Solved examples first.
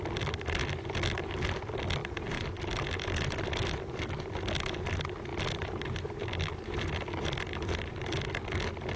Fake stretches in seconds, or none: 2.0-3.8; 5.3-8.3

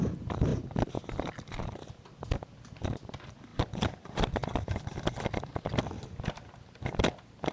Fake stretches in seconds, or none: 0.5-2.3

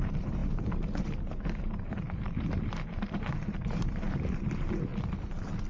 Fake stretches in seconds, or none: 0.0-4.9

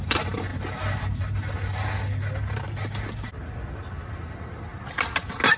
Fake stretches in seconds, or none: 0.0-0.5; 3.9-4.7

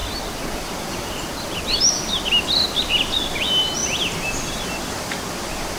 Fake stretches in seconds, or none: none

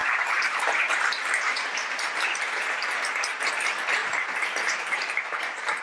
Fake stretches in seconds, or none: 0.0-3.5; 4.0-5.8

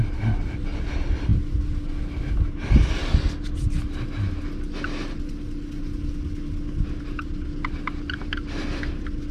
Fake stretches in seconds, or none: none

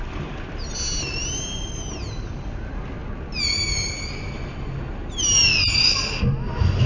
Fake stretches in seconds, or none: none